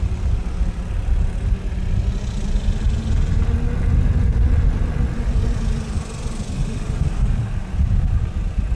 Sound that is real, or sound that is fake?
real